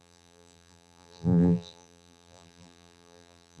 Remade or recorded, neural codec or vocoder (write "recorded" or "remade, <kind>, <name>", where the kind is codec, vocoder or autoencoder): remade, vocoder, BigVGAN v2